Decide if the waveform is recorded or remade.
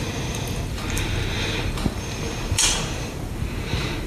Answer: remade